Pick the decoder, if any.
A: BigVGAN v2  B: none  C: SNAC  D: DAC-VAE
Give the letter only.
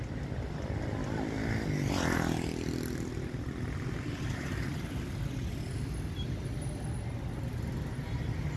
B